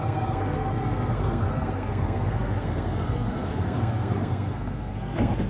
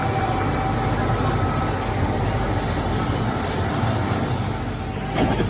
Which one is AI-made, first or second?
first